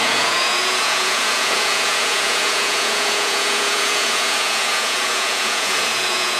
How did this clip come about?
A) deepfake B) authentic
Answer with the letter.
A